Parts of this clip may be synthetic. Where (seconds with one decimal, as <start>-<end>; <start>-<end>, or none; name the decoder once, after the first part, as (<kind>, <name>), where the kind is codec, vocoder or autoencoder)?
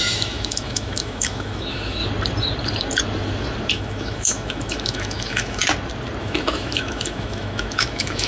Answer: 0.0-2.0 (autoencoder, DAC-VAE); 3.7-5.6; 6.2-8.3